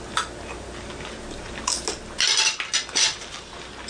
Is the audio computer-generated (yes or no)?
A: no